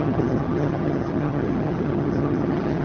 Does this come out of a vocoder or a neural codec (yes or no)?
yes